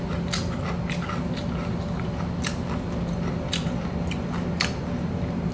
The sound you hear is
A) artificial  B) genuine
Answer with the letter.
B